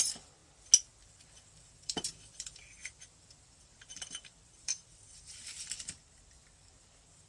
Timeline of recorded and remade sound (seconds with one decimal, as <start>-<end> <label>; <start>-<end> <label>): 0.0-0.4 remade; 0.4-1.1 recorded; 1.1-7.3 remade